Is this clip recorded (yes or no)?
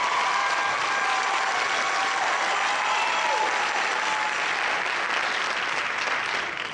yes